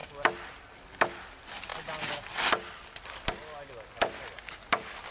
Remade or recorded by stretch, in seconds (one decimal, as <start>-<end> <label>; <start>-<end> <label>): 0.0-5.1 recorded